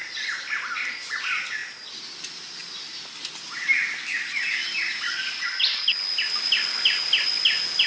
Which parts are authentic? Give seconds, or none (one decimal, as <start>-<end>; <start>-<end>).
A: 0.0-7.9